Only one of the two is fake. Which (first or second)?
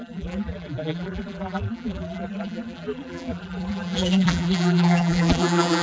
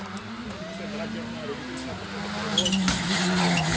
first